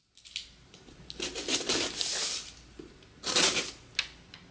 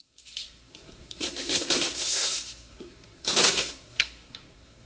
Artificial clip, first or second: second